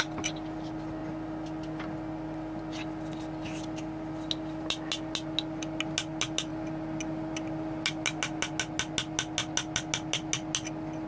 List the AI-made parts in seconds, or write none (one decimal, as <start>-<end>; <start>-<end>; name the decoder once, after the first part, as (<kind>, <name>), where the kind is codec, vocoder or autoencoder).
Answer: none